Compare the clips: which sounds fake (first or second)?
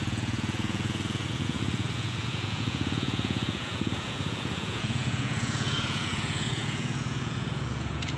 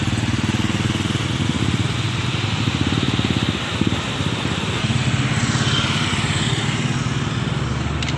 first